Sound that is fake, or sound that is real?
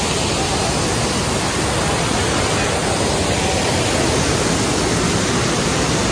real